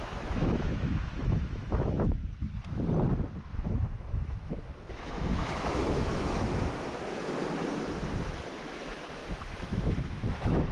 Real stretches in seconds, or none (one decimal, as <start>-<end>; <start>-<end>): 2.2-3.4; 7.4-8.7